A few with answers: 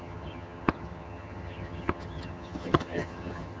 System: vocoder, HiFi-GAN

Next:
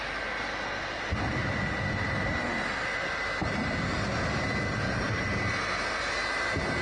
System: none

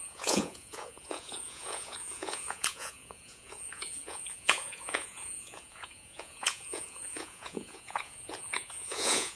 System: vocoder, Vocos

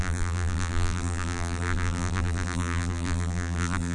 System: vocoder, BigVGAN v2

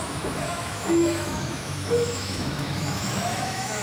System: autoencoder, DAC-VAE